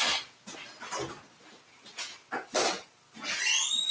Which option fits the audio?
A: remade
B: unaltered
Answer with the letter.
B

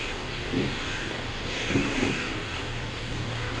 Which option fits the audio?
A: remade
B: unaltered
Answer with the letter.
A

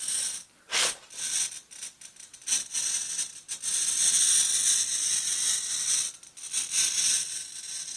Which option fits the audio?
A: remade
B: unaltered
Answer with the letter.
B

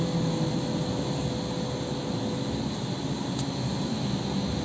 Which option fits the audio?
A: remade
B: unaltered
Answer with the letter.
B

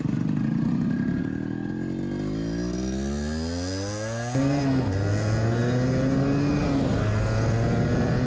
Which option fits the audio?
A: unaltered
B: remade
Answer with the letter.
A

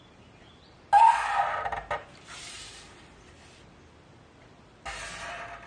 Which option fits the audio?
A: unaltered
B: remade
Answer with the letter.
A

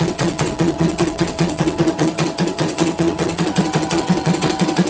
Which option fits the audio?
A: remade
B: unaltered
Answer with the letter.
A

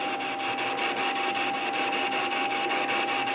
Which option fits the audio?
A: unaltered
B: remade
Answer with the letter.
A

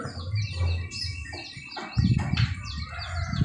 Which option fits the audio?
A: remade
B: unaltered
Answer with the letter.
B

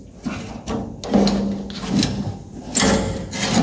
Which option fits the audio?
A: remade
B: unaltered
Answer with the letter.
B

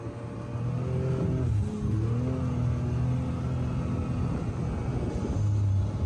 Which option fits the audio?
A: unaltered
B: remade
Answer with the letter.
A